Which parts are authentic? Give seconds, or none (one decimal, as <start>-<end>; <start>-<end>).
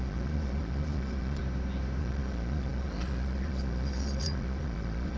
1.4-2.0